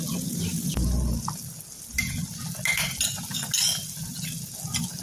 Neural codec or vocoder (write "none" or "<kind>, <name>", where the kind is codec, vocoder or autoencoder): none